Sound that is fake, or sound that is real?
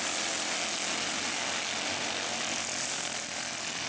real